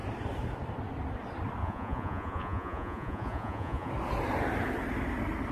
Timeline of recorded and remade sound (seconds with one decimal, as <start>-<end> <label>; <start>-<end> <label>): 0.0-1.6 recorded; 1.6-3.9 remade; 3.9-5.5 recorded